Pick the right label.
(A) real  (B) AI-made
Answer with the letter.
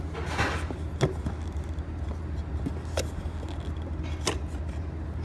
A